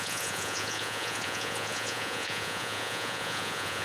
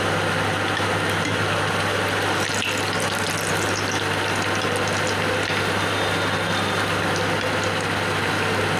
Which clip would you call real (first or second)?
second